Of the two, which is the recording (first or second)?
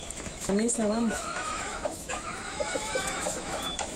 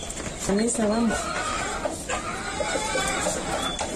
second